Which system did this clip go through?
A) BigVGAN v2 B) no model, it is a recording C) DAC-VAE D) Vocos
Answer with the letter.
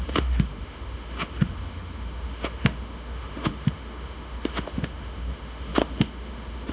C